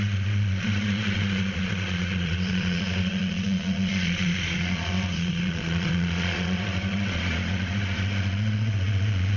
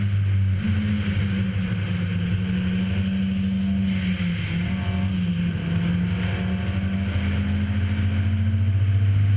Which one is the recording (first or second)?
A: second